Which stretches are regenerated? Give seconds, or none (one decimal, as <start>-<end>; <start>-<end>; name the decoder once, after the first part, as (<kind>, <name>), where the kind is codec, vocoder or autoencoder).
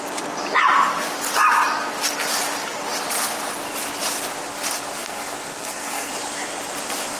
5.0-6.1 (codec, SNAC)